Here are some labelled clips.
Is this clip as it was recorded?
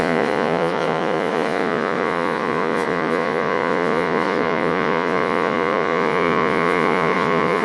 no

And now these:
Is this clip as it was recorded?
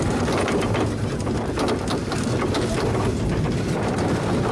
yes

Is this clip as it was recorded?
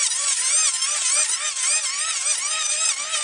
yes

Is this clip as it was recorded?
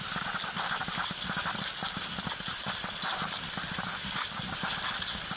yes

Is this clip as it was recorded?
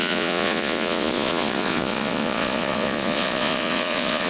no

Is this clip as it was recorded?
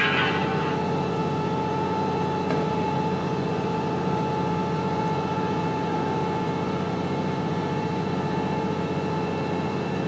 no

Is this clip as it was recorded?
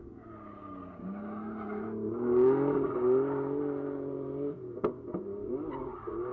yes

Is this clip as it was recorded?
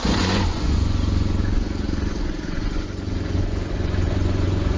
no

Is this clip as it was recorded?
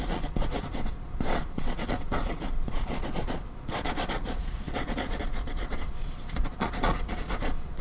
no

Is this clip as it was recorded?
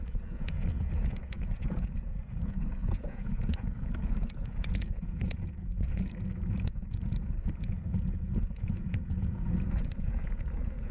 no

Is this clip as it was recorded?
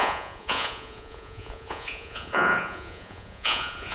no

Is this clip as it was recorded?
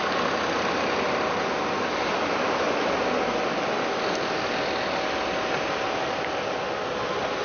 yes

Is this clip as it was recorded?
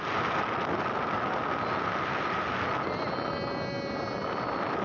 yes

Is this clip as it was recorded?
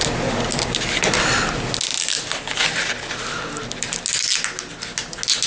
yes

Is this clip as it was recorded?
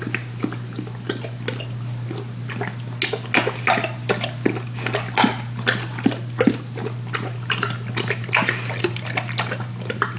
yes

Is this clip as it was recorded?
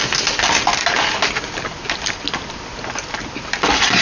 yes